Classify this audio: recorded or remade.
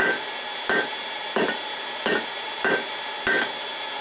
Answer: recorded